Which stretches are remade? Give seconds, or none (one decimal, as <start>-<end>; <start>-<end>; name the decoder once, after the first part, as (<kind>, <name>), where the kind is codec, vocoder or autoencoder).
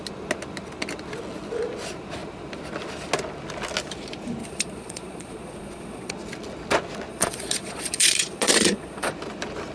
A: 4.4-6.1 (vocoder, Vocos); 7.1-9.1